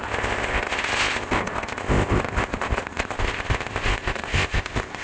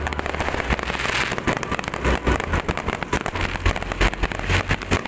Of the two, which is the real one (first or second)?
second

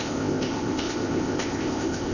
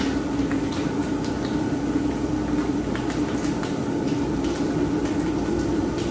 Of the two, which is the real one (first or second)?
second